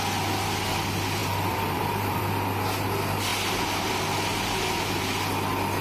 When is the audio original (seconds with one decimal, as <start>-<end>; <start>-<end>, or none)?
0.0-1.2; 2.2-5.8